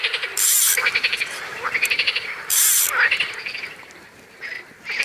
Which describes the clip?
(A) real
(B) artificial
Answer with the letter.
B